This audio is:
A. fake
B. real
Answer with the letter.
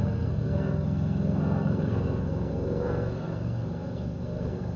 A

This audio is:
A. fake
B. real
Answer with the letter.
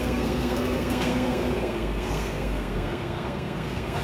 A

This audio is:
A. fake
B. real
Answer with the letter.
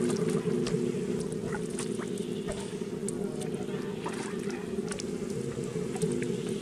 B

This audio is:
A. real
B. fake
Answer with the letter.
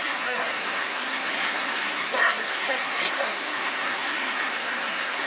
B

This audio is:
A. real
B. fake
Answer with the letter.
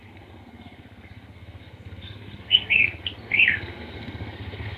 B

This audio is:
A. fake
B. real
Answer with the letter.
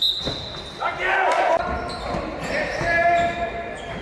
B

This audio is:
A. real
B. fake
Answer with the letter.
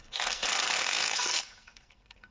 B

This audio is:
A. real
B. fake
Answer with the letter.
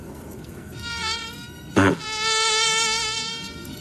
B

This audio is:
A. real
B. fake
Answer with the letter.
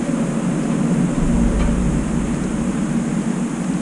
A